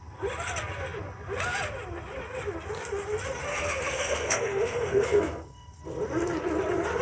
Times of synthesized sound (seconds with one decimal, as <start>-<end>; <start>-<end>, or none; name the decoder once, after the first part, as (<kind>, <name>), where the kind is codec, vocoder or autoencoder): 3.5-5.8 (codec, SNAC)